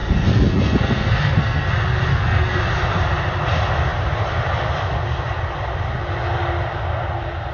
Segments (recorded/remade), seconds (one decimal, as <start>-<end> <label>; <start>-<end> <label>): 0.0-1.7 remade; 1.7-2.1 recorded; 2.1-2.6 remade; 2.6-7.5 recorded